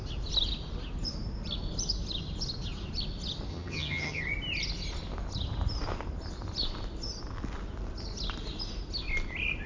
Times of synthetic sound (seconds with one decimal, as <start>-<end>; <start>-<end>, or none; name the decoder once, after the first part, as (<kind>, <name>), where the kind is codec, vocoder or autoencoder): 3.5-4.2 (vocoder, HiFi-GAN)